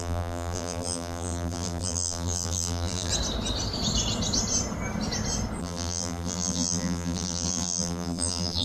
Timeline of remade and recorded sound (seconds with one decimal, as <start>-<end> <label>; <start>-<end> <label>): 0.0-3.1 remade; 3.1-5.6 recorded; 5.6-8.6 remade